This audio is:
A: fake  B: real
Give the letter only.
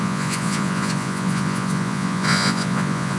A